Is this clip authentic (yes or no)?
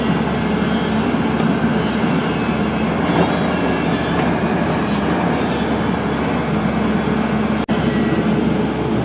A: yes